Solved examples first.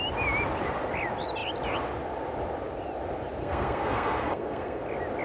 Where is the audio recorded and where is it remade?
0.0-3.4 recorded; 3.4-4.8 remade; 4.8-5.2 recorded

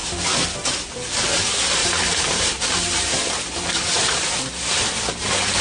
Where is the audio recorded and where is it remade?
0.0-0.7 remade; 0.7-1.8 recorded; 1.8-4.4 remade; 4.4-5.6 recorded

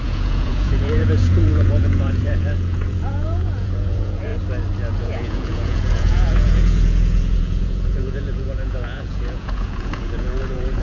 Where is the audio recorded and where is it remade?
0.0-4.3 remade; 4.3-5.0 recorded; 5.0-10.8 remade